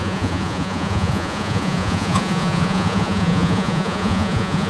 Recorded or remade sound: remade